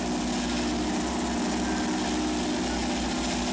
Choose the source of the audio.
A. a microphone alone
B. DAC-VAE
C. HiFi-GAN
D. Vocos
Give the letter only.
A